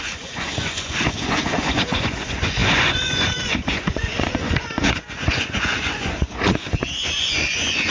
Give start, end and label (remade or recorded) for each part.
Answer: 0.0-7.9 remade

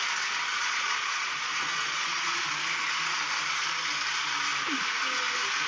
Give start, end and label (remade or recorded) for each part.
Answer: 0.0-0.5 recorded; 0.5-2.5 remade; 2.5-5.7 recorded

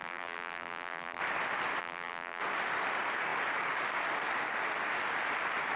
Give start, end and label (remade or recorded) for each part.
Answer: 0.0-1.2 remade; 1.2-1.8 recorded; 1.8-2.4 remade; 2.4-5.8 recorded

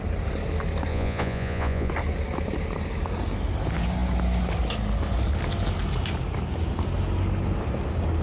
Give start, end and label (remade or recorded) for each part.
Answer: 0.0-0.9 recorded; 0.9-1.9 remade; 1.9-8.2 recorded

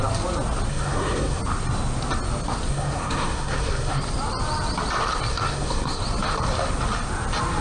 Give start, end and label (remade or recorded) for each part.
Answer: 0.0-0.7 recorded; 0.7-1.4 remade; 1.4-2.7 recorded; 2.7-4.0 remade; 4.0-5.3 recorded; 5.3-6.0 remade; 6.0-7.6 recorded

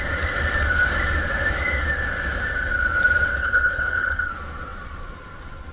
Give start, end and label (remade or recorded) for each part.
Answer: 0.0-3.3 recorded; 3.3-4.3 remade; 4.3-5.7 recorded